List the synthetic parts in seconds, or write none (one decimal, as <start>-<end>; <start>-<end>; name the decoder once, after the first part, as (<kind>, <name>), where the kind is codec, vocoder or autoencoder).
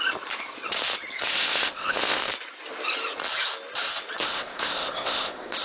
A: 1.3-2.2 (codec, ZipCodec); 4.2-5.6